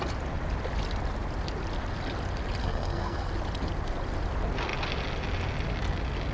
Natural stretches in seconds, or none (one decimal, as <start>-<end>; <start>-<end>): 0.0-2.6; 3.3-6.3